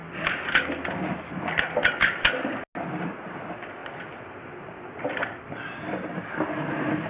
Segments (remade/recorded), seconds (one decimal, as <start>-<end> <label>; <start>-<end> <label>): 0.0-3.8 recorded; 3.8-5.0 remade; 5.0-7.1 recorded